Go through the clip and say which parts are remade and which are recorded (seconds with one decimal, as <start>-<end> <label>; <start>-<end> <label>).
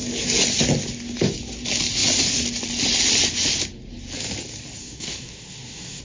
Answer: 0.0-4.8 recorded; 4.8-6.0 remade